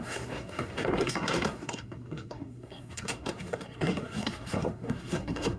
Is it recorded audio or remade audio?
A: remade